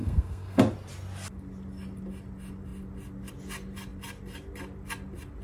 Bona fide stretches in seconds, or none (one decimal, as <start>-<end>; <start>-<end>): 0.6-5.4